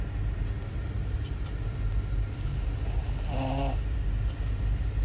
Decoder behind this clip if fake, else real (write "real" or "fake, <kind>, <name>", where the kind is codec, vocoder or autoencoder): real